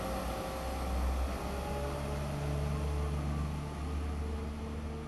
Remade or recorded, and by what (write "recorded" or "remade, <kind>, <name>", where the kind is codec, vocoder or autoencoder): recorded